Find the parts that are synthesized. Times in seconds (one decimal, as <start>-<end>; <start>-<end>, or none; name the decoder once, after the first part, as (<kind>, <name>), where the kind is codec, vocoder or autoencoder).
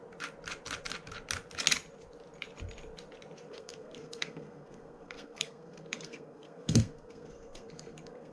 3.5-8.3 (codec, SNAC)